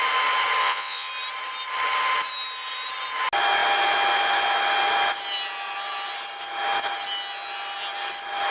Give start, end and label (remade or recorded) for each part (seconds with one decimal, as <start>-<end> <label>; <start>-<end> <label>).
0.0-0.6 recorded; 0.6-1.1 remade; 1.1-8.5 recorded